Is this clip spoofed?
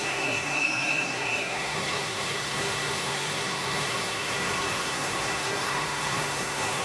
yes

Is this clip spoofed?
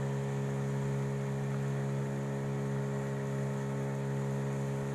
no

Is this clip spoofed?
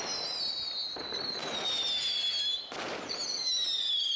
no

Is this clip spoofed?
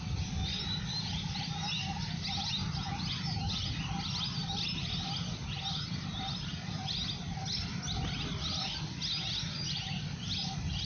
no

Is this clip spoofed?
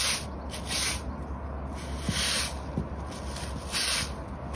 no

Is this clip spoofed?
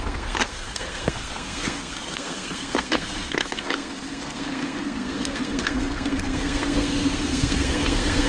yes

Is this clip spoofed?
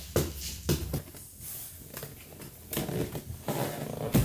no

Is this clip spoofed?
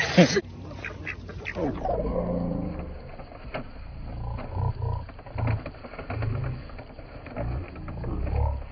no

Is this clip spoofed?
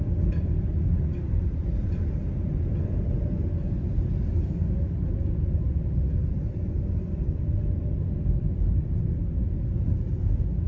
no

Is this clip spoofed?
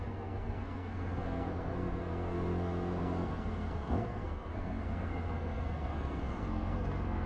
yes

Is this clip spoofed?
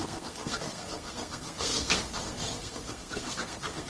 yes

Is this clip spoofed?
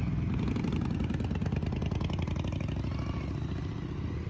no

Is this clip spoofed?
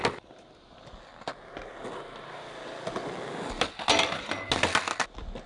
no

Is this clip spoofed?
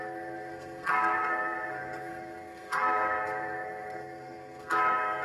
yes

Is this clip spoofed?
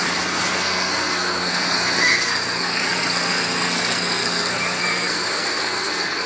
yes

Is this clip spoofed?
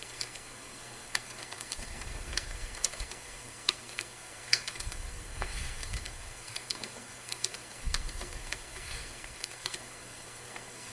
yes